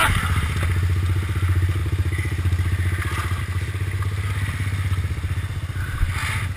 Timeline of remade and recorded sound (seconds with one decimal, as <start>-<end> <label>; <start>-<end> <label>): 0.0-6.6 recorded